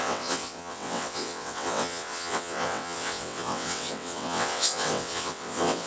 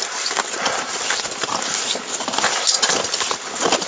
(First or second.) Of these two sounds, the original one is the second